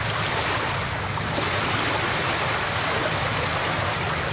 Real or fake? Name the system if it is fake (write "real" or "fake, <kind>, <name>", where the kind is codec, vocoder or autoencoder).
real